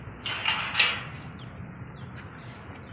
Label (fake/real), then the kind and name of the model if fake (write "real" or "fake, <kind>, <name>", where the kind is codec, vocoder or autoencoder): fake, vocoder, BigVGAN v2